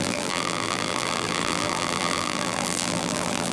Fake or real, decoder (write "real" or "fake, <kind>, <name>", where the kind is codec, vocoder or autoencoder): fake, vocoder, BigVGAN v2